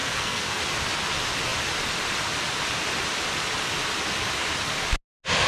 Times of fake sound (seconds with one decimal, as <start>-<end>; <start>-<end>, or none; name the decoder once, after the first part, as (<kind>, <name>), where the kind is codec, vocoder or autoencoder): 0.0-0.6 (codec, SNAC)